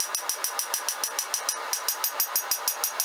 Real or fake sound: real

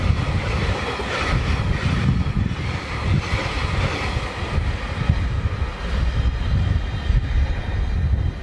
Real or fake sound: real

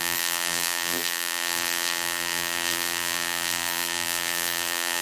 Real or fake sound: fake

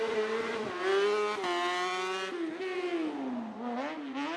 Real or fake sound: real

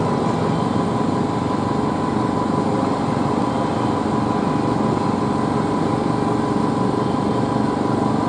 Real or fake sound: real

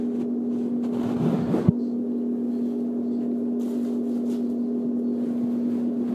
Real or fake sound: real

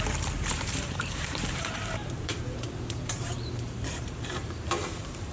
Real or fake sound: fake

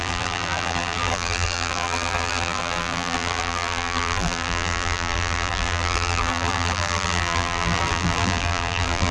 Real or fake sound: fake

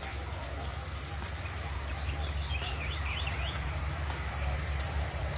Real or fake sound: fake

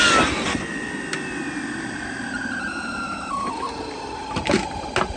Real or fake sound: real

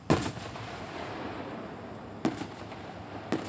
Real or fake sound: real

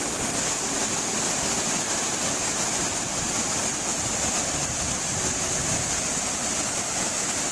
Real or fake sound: real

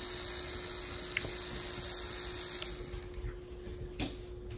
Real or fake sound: real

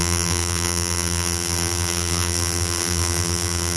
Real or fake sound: fake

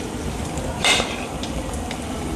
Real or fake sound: fake